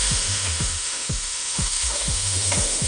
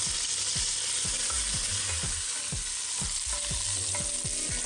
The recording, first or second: second